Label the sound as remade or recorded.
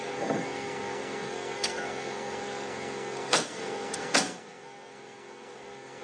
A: remade